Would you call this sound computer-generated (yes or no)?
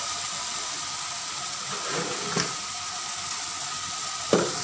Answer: no